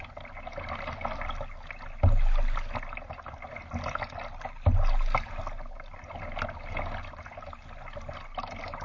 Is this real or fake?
real